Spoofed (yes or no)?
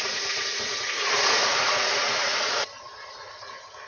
yes